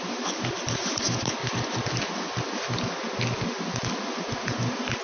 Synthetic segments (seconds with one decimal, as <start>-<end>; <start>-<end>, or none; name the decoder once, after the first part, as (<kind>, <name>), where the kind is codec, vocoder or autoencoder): 0.0-1.4 (vocoder, BigVGAN v2); 4.4-5.0